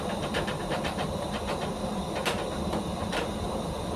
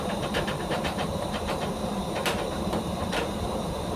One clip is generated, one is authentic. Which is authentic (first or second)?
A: first